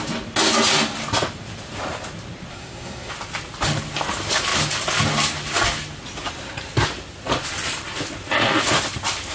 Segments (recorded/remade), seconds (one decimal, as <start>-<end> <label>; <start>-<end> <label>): 0.0-2.5 recorded; 2.5-3.1 remade; 3.1-9.3 recorded